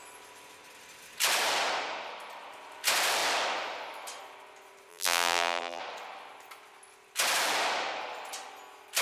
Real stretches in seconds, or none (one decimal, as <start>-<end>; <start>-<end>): 0.0-4.9; 5.8-9.0

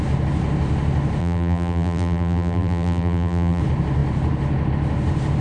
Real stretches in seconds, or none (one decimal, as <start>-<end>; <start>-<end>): 0.0-1.2; 3.6-5.4

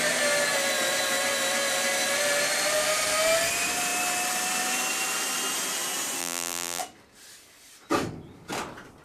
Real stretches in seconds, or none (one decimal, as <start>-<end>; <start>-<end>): 0.0-6.2; 6.8-9.0

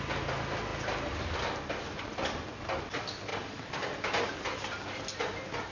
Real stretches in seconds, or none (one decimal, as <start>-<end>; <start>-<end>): 0.0-5.7

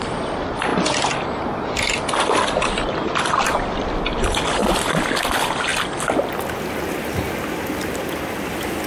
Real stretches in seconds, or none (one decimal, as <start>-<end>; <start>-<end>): 0.0-8.9

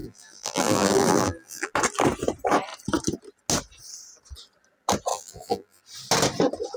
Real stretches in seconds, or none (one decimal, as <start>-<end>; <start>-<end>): 1.7-5.1; 5.8-6.8

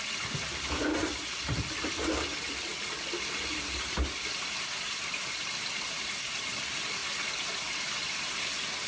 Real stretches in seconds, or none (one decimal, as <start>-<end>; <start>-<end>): 2.7-3.5; 7.0-8.4